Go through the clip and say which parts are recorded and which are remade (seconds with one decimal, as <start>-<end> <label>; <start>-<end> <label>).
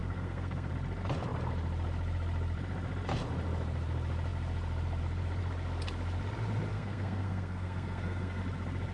0.0-0.7 remade; 0.7-6.7 recorded; 6.7-8.4 remade; 8.4-8.9 recorded